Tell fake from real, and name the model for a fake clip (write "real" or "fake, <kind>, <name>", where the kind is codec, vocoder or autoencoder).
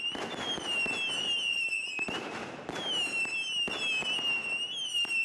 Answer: real